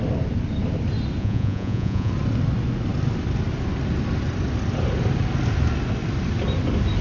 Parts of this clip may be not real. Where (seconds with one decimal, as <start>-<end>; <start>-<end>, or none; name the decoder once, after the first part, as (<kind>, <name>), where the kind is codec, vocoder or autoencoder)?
1.2-2.1 (vocoder, Vocos)